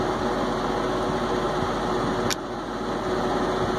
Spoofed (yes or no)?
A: no